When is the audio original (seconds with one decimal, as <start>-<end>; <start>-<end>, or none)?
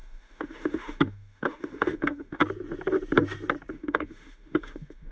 2.4-3.7